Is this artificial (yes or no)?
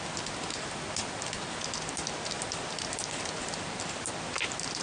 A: no